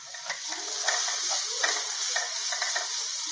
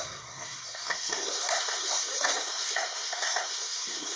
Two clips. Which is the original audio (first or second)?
first